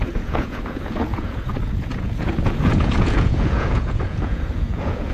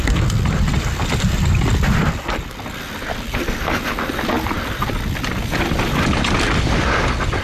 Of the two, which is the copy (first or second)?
first